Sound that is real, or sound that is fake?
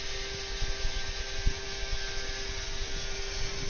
real